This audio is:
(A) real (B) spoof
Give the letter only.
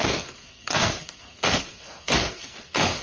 B